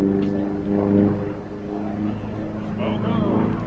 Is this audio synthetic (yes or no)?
no